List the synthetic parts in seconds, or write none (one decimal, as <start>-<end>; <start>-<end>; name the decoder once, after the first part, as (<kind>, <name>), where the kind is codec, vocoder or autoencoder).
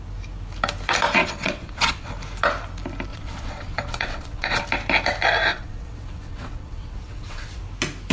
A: 1.2-2.1 (vocoder, WaveNeXt); 3.1-4.6; 5.5-7.6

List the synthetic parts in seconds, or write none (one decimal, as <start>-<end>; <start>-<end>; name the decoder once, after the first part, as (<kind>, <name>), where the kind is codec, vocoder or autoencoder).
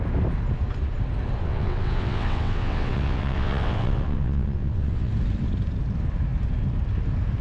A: 1.4-5.1 (vocoder, WaveNeXt)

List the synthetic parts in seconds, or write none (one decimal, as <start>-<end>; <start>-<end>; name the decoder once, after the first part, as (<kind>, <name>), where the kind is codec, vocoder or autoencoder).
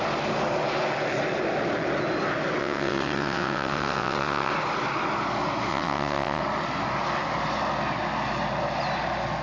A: 2.6-4.5 (vocoder, WaveNeXt); 5.7-6.4